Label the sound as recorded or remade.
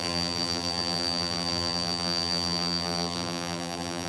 remade